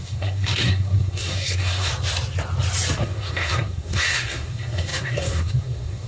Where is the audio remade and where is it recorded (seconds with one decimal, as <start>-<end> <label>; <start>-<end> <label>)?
0.0-1.9 remade; 1.9-3.0 recorded; 3.0-6.1 remade